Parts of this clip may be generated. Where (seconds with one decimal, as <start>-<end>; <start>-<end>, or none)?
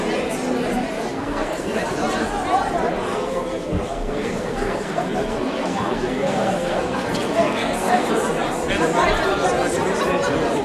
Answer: 1.1-1.8; 3.1-8.1